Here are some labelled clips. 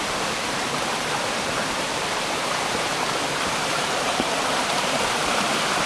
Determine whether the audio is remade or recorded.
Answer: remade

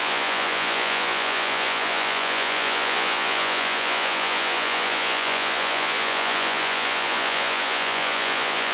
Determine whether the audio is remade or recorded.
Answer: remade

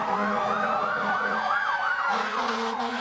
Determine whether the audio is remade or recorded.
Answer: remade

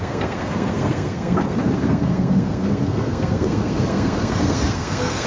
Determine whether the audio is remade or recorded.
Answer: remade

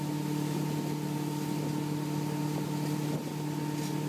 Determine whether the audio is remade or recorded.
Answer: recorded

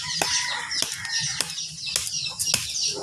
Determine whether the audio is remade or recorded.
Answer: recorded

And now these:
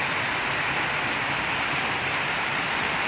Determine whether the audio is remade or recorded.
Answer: recorded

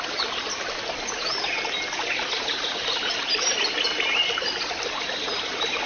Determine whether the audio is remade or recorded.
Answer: recorded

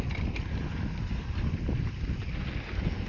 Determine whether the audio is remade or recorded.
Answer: recorded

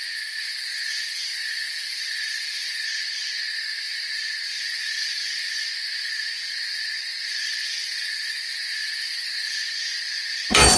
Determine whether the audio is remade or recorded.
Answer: recorded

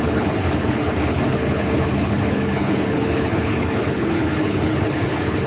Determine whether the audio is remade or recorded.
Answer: remade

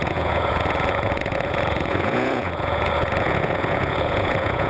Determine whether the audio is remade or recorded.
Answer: remade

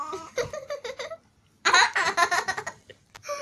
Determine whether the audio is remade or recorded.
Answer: remade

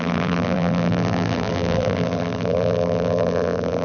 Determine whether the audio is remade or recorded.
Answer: remade